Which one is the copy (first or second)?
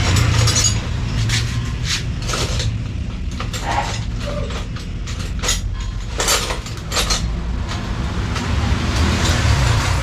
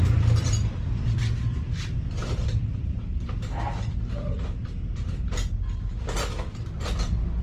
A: second